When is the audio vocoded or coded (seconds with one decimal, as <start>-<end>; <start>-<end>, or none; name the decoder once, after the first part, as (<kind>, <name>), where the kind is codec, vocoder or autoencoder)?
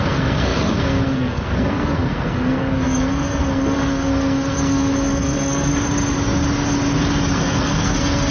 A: 0.0-5.7 (codec, SNAC); 7.3-8.3